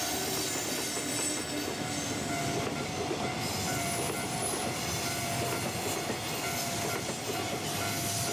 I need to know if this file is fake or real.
real